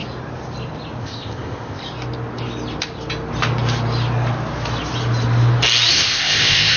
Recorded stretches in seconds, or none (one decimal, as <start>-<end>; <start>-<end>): 0.0-1.0; 1.8-5.9